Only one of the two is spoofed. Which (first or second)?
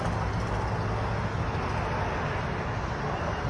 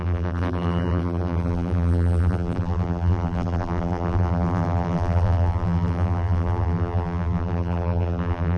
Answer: second